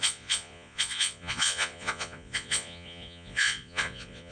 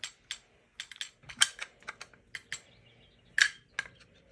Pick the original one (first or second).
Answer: second